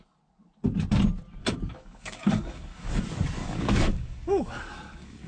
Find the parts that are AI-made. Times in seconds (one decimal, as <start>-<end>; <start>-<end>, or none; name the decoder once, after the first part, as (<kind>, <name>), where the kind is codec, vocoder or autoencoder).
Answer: 1.4-3.0 (codec, DAC); 3.4-5.3